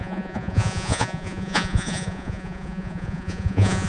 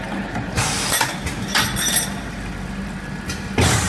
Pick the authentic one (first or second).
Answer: second